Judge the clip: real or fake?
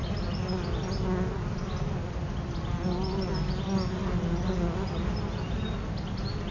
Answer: real